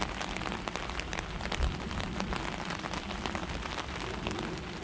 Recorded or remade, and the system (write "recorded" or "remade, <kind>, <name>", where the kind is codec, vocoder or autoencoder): recorded